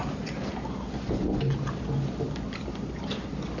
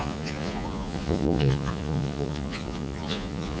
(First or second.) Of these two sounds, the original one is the first